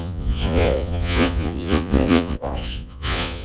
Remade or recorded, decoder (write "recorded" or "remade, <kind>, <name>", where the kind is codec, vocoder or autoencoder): remade, vocoder, Vocos